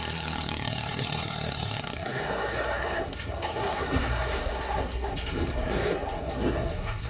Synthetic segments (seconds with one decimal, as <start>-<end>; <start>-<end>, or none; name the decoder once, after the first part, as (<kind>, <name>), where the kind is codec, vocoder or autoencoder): 0.0-7.1 (codec, SNAC)